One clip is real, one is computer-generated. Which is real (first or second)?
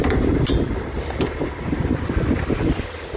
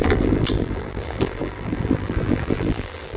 first